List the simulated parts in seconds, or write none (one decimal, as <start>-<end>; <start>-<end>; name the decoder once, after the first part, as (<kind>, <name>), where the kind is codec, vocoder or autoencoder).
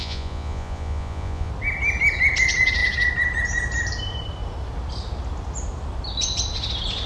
0.0-1.5 (vocoder, Vocos)